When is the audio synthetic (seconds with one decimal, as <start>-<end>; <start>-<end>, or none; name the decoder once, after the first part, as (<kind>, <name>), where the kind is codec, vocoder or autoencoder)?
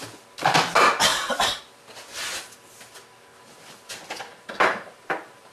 1.1-1.6 (vocoder, BigVGAN v2); 4.3-5.5